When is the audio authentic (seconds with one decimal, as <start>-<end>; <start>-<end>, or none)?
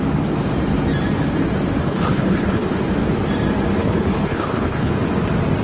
0.0-1.8; 2.8-3.8; 4.9-5.6